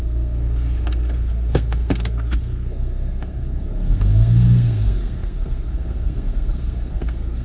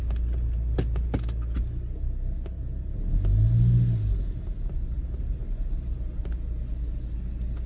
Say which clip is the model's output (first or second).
first